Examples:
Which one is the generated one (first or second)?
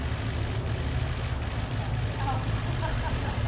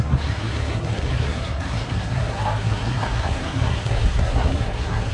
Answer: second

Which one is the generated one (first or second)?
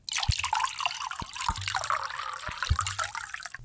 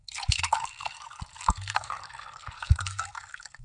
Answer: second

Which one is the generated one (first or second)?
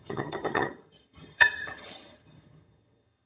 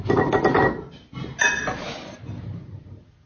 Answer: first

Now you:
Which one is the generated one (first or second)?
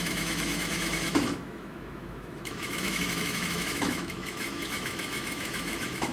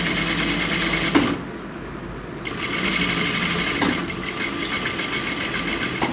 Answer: first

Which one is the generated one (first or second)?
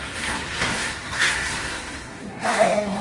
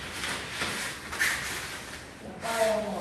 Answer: first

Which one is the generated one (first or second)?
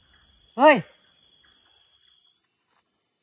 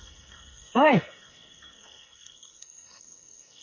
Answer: second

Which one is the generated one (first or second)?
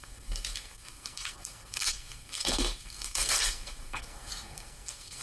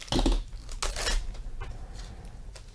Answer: first